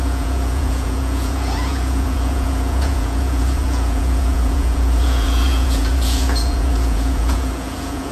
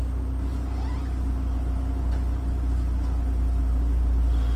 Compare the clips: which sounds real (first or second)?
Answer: second